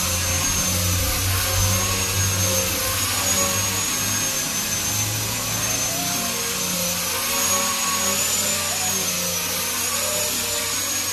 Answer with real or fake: real